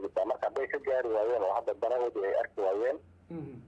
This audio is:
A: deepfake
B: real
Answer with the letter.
B